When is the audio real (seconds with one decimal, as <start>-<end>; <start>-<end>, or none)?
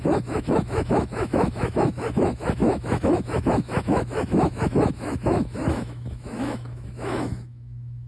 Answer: none